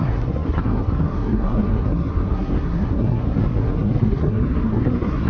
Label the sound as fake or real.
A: fake